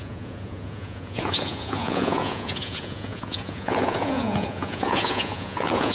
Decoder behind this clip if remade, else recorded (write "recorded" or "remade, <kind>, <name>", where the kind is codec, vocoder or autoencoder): remade, vocoder, Vocos